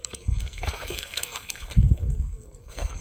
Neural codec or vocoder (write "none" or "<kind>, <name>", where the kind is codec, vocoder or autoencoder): codec, SNAC